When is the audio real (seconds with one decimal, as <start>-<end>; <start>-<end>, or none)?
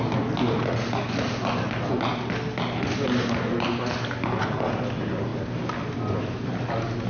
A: 0.0-7.1